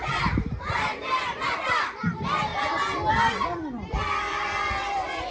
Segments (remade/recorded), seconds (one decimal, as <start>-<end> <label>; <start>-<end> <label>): 0.0-2.5 remade; 2.5-3.1 recorded; 3.1-5.3 remade